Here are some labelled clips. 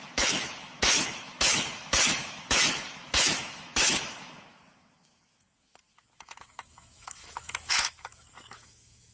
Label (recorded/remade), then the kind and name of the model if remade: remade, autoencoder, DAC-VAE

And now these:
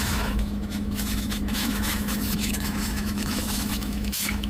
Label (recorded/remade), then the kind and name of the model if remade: remade, autoencoder, DAC-VAE